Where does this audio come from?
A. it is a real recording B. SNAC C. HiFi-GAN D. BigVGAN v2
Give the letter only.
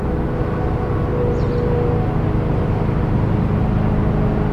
A